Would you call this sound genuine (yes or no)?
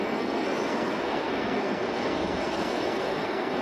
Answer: no